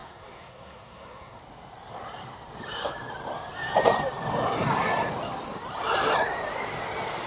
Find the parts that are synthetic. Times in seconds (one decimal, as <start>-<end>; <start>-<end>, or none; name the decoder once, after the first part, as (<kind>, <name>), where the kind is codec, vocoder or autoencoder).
0.0-1.4 (codec, SNAC)